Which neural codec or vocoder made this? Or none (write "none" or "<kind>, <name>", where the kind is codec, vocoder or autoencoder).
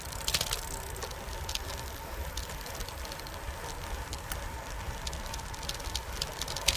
none